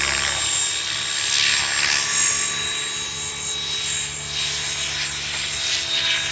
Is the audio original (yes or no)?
yes